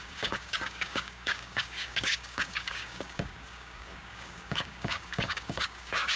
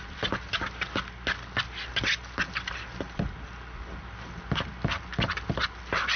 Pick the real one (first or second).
second